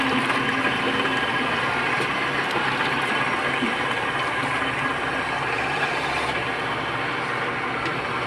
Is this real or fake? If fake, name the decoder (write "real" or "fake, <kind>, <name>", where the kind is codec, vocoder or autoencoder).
real